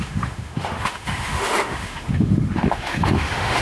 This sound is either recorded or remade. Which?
remade